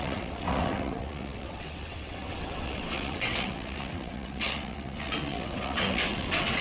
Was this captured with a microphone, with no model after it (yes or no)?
no